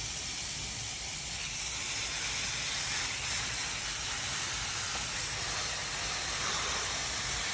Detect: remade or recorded recorded